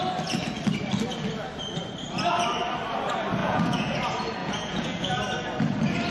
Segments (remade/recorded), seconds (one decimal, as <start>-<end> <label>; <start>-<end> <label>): 0.0-3.4 recorded; 3.4-4.0 remade; 4.0-4.4 recorded; 4.4-5.2 remade; 5.2-6.1 recorded